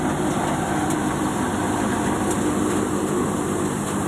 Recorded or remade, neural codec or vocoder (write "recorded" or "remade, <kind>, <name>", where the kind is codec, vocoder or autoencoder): recorded